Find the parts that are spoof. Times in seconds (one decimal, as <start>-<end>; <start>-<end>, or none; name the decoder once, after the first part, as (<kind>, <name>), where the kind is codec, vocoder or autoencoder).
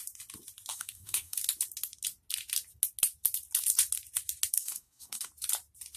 0.7-1.4 (codec, DAC); 4.5-5.3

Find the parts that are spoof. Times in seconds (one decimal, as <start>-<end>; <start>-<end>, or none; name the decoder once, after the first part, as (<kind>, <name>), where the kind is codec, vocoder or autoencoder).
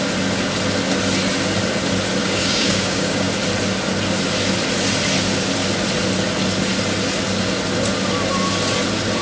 2.2-3.3 (codec, DAC)